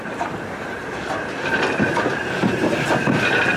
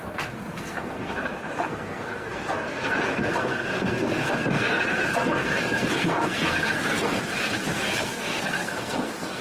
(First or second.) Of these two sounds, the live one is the first